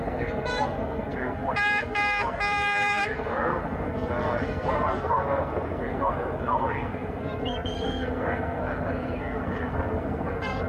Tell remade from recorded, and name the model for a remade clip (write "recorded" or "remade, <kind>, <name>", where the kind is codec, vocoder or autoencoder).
remade, codec, SNAC